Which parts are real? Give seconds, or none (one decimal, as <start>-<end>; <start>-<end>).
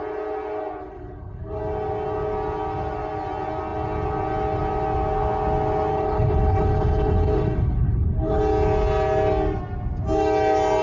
0.0-0.8; 1.6-5.9; 8.4-10.8